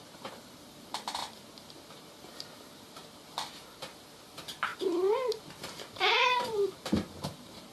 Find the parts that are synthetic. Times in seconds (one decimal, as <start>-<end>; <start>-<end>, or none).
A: 0.0-7.7